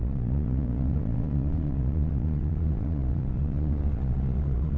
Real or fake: fake